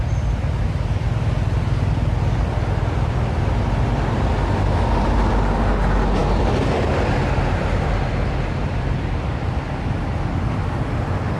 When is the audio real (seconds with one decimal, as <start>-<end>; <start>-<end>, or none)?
0.0-11.4